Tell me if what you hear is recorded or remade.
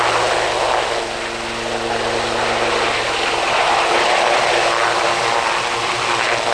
recorded